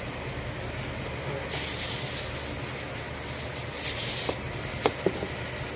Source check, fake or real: real